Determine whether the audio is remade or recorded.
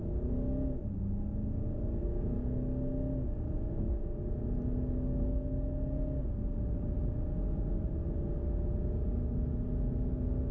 recorded